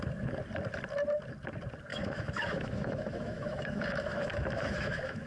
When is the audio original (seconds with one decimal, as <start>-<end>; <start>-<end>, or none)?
0.0-1.9